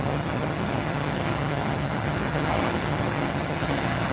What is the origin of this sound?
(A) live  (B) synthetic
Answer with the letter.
B